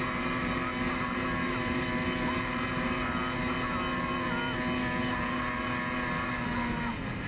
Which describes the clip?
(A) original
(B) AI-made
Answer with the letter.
A